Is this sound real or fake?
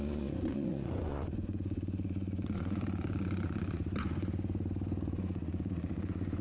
fake